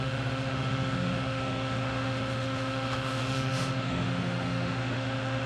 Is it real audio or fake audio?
fake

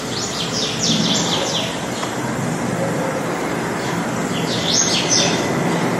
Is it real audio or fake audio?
fake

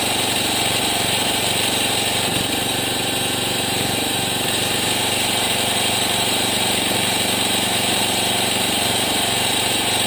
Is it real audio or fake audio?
fake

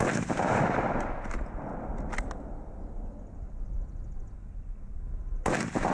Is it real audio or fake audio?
real